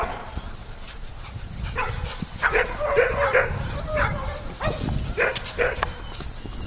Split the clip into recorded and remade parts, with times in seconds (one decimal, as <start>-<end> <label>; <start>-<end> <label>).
0.0-0.6 recorded; 0.6-4.6 remade; 4.6-6.7 recorded